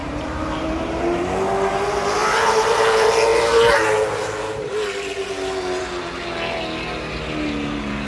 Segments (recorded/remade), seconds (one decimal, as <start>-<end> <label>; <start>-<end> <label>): 0.0-1.2 remade; 1.2-2.2 recorded; 2.2-2.8 remade; 2.8-8.1 recorded